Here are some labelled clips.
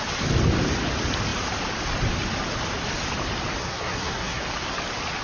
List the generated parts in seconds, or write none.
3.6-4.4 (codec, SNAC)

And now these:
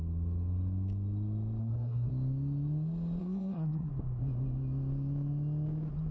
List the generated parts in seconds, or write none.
1.6-2.1 (codec, SNAC); 3.2-3.9